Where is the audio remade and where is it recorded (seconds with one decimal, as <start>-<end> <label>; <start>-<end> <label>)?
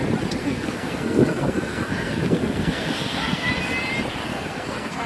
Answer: 0.0-0.4 recorded; 0.4-3.5 remade; 3.5-4.3 recorded; 4.3-5.1 remade